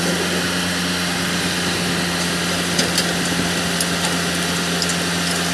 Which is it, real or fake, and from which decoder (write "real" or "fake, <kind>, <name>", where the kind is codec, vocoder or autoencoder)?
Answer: real